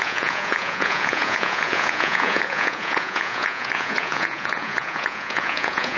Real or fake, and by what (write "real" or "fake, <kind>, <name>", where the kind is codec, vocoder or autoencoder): fake, vocoder, Vocos